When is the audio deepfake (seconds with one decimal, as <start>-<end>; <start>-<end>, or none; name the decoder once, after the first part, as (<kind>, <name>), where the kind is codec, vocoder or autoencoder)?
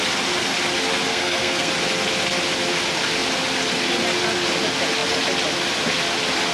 1.1-1.7 (codec, SNAC)